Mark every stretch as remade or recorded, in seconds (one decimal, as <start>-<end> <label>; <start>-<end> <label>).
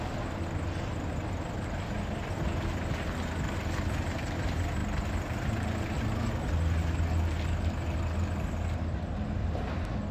0.0-10.1 recorded